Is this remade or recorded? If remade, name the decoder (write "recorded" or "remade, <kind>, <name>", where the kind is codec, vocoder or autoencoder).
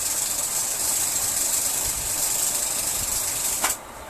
remade, vocoder, BigVGAN v2